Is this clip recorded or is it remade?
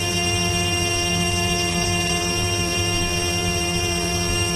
remade